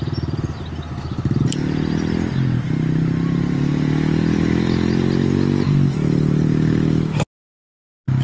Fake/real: real